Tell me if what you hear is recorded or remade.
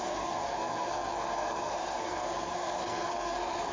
remade